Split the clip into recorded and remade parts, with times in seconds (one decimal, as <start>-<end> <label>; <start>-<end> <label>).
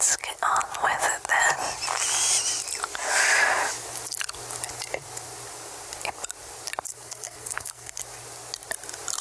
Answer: 0.0-6.9 recorded; 6.9-8.0 remade; 8.0-9.2 recorded